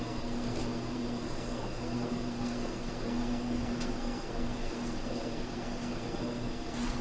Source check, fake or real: fake